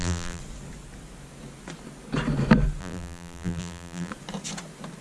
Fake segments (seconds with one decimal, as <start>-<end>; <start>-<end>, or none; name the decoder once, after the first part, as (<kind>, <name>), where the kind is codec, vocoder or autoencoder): 0.0-0.4 (vocoder, BigVGAN v2); 2.8-4.1